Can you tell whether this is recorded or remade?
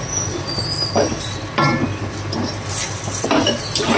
recorded